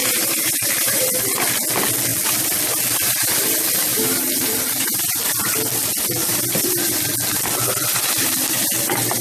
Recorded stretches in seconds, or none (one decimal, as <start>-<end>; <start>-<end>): 1.0-3.9; 5.3-6.2; 7.0-9.2